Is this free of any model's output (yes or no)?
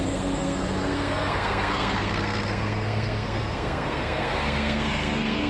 no